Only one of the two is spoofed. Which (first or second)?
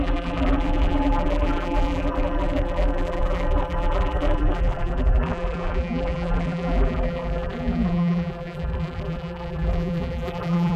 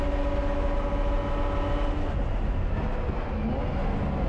first